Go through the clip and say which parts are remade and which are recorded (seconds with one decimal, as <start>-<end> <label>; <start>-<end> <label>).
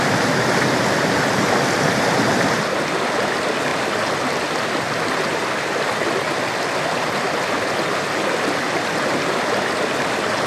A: 0.0-10.5 recorded